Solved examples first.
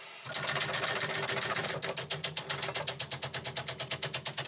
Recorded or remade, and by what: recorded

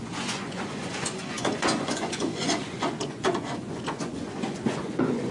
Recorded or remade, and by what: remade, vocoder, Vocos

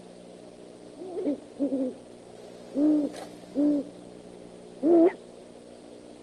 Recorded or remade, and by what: recorded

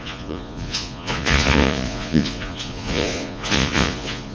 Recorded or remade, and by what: remade, vocoder, Vocos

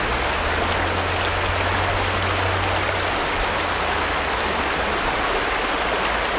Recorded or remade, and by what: recorded